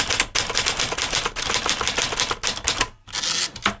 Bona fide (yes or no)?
yes